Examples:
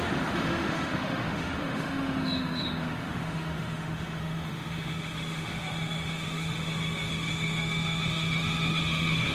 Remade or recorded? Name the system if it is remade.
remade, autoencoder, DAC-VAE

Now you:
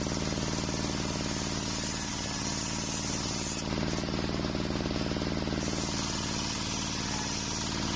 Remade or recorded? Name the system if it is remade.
recorded